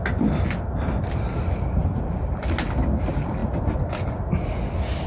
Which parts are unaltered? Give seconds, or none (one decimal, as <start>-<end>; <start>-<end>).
0.0-1.8; 2.4-5.1